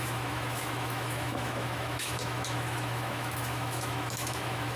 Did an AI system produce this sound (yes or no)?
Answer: yes